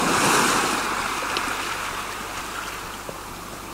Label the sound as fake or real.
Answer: real